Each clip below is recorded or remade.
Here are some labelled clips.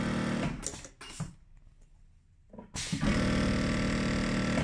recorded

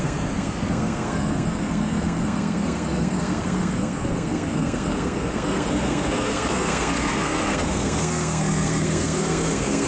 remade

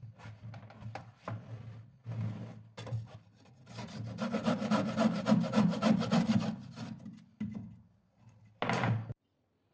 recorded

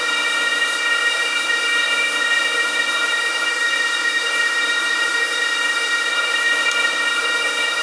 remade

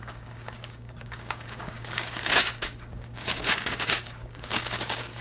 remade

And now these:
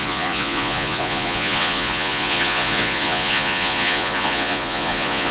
remade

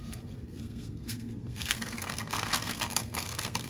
remade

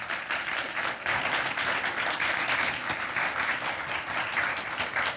recorded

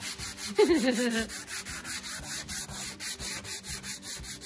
recorded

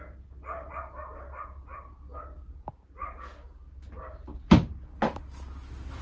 recorded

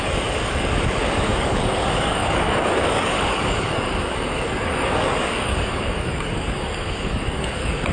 remade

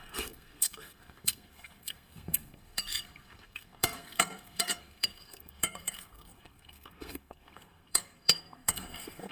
remade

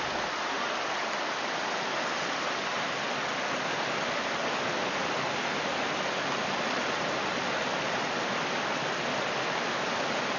recorded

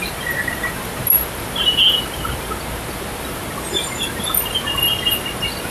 recorded